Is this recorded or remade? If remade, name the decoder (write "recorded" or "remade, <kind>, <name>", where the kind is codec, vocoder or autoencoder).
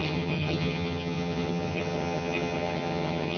remade, vocoder, HiFi-GAN